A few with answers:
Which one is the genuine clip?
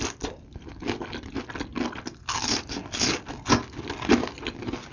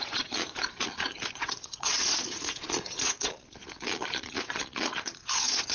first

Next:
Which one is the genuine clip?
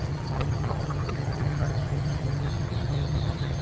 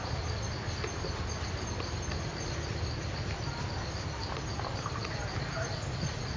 second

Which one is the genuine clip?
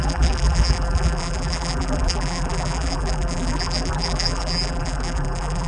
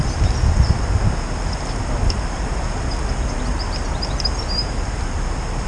second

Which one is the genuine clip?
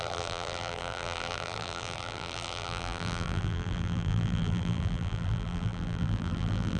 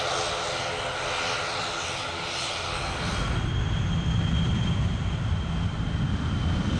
second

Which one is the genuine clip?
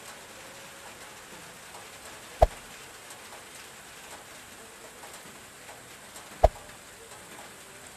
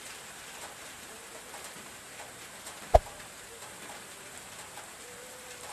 first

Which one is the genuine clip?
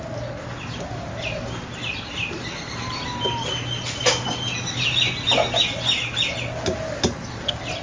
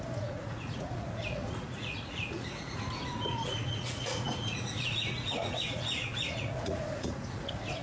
first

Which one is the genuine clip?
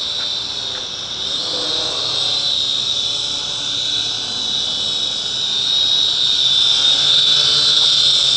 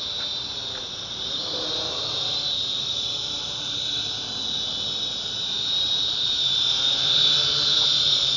first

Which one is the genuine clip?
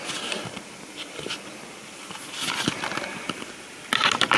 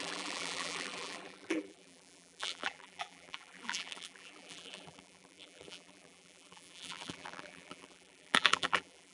first